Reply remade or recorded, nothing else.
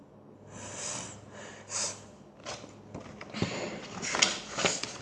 remade